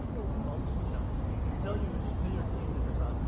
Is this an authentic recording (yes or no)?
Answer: yes